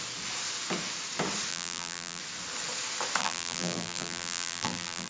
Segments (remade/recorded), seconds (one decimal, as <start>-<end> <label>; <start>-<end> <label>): 0.0-1.5 recorded; 1.5-2.2 remade; 2.2-3.2 recorded; 3.2-5.1 remade

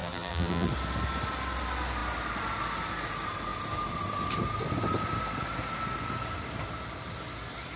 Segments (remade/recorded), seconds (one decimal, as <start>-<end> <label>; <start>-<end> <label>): 0.0-0.7 remade; 0.7-7.8 recorded

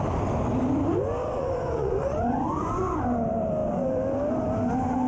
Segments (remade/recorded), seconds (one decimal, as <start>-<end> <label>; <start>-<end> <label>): 0.0-1.2 recorded; 1.2-3.0 remade; 3.0-5.1 recorded

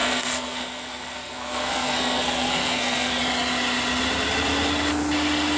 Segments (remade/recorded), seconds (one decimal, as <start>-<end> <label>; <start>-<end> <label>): 0.0-3.2 remade; 3.2-5.6 recorded

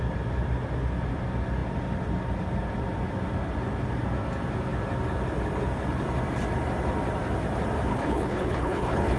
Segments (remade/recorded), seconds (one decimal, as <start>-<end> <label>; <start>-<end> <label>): 0.0-7.9 recorded; 7.9-9.2 remade

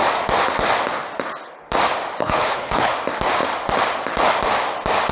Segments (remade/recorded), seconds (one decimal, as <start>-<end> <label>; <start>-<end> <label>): 0.0-2.2 recorded; 2.2-2.9 remade; 2.9-5.1 recorded